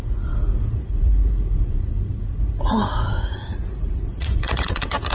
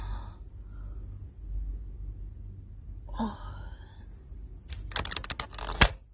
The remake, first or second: first